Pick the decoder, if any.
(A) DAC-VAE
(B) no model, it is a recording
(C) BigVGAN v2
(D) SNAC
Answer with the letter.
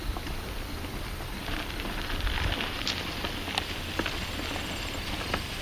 B